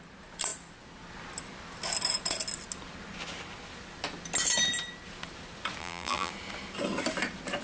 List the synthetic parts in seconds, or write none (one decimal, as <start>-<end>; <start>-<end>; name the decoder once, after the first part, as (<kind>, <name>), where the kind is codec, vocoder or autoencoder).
5.8-6.3 (vocoder, BigVGAN v2)